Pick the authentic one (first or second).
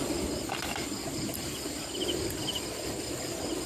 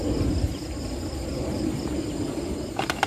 second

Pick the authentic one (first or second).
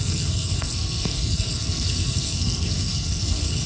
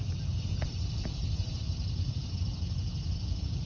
second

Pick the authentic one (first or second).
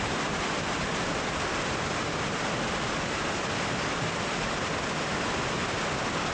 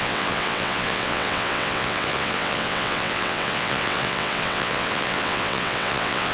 first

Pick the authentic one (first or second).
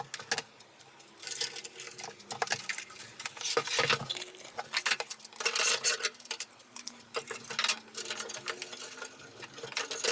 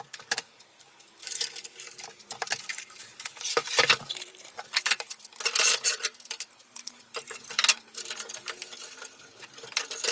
first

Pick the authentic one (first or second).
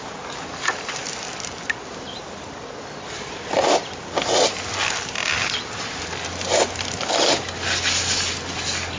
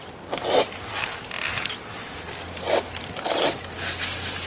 first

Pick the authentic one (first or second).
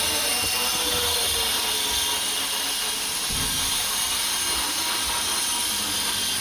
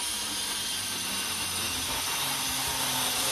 first